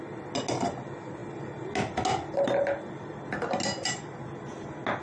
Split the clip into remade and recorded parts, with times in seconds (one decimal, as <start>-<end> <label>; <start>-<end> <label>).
0.0-5.0 recorded